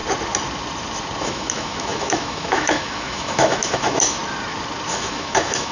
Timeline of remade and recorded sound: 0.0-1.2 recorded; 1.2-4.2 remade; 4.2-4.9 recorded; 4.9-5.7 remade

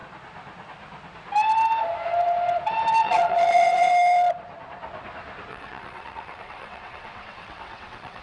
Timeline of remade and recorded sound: 0.0-3.0 recorded; 3.0-3.9 remade; 3.9-5.5 recorded; 5.5-8.2 remade